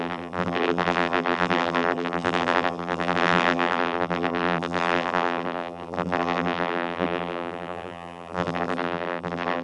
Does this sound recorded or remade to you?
remade